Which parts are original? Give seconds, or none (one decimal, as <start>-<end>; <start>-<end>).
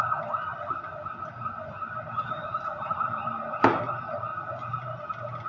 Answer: 4.3-5.5